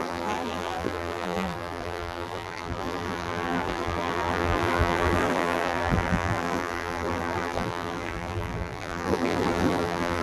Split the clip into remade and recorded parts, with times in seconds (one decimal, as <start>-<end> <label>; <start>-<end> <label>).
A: 0.0-10.2 remade